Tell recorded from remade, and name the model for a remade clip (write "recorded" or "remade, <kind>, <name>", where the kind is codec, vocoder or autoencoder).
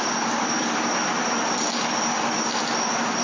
recorded